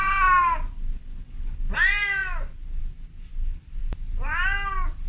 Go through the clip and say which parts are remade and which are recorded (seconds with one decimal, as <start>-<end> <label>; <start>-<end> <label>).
0.0-5.1 recorded